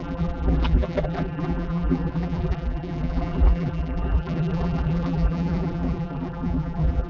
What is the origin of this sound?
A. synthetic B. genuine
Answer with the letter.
A